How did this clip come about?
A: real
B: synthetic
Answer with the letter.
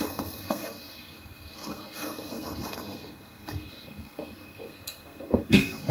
B